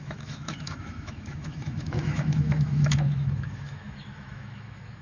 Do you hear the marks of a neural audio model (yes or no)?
yes